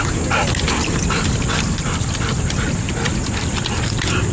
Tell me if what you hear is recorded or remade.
recorded